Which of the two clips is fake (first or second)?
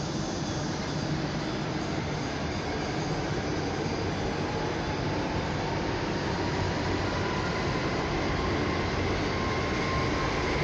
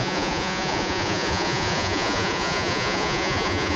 second